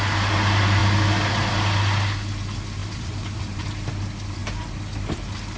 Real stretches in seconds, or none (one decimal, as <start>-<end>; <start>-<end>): 0.0-2.8; 3.7-5.6